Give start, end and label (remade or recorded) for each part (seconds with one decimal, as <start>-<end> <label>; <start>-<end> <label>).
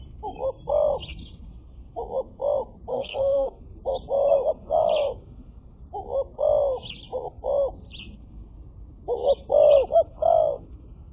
0.0-2.9 recorded; 2.9-3.6 remade; 3.6-11.1 recorded